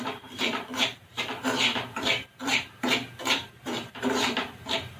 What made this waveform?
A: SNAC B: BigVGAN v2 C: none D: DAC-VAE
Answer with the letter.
B